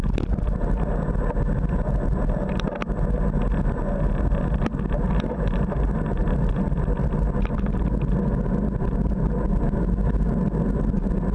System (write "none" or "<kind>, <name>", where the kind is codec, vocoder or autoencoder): none